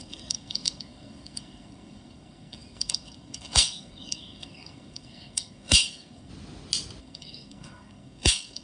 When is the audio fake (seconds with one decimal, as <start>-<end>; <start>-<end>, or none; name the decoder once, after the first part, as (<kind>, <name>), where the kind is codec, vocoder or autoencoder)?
0.0-6.3 (codec, SNAC); 7.0-8.6